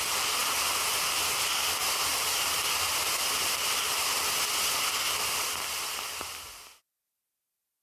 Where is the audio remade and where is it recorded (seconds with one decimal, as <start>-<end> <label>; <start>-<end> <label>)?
0.0-7.8 recorded